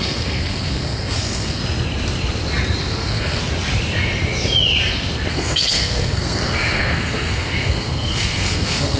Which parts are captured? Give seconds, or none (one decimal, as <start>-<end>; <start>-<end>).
1.6-2.8; 3.4-5.3